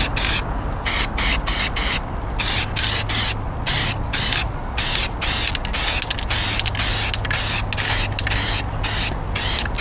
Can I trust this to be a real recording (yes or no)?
yes